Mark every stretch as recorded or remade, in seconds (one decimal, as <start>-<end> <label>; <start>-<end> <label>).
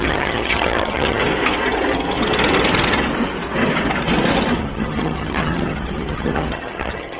0.0-1.2 remade; 1.2-4.6 recorded; 4.6-7.2 remade